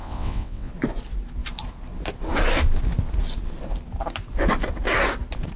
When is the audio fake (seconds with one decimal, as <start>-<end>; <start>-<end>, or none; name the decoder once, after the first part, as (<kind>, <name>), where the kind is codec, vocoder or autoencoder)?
0.0-0.7 (vocoder, WaveNeXt)